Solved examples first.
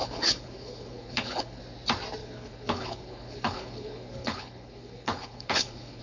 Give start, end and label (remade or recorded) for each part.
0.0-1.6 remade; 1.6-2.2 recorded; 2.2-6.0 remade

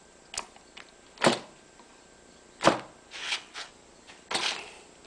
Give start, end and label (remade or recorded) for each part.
0.0-3.2 recorded; 3.2-3.7 remade; 3.7-5.1 recorded

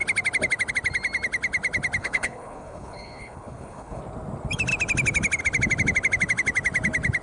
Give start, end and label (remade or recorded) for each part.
0.0-2.0 recorded; 2.0-4.0 remade; 4.0-7.2 recorded

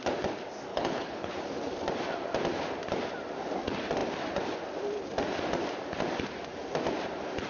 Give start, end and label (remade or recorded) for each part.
0.0-0.7 recorded; 0.7-1.3 remade; 1.3-7.5 recorded